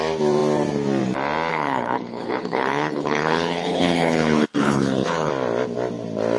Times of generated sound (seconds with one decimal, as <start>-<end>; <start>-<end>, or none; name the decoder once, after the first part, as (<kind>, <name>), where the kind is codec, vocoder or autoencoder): 1.5-5.3 (codec, HILCodec)